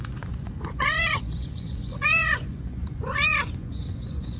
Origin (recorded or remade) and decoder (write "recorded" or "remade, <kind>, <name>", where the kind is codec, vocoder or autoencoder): remade, vocoder, Vocos